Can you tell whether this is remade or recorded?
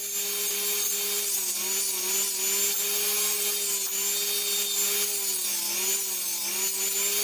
recorded